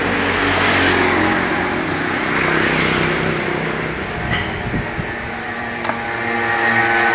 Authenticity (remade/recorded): recorded